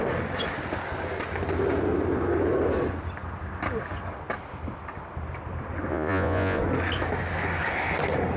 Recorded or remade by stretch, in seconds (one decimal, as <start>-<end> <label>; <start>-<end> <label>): 0.0-5.9 recorded; 5.9-6.6 remade; 6.6-8.4 recorded